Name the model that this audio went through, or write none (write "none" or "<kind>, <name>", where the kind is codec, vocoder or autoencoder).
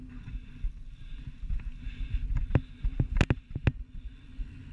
none